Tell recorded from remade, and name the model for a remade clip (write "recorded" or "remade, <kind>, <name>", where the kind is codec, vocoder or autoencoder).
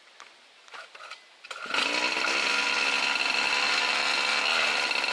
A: recorded